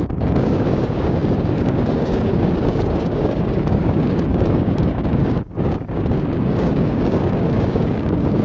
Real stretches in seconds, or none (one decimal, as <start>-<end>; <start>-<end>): none